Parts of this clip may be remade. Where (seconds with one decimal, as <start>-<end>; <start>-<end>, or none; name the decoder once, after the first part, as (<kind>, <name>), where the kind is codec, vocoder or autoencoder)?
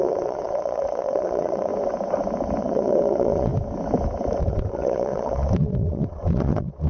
0.0-1.7 (vocoder, WaveNeXt); 2.6-3.5; 4.4-6.9